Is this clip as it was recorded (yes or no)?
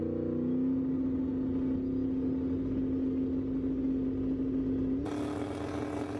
yes